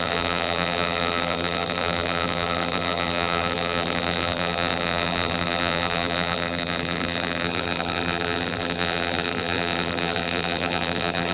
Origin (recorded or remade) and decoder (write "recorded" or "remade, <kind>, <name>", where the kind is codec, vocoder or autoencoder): remade, vocoder, BigVGAN v2